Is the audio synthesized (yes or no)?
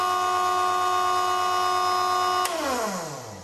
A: no